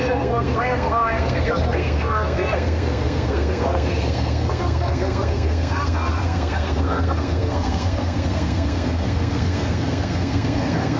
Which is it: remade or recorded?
remade